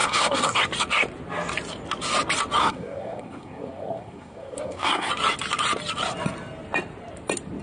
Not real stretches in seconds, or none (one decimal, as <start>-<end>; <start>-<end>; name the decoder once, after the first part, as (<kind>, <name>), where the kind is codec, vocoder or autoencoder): 0.0-0.6 (codec, SNAC); 2.6-5.1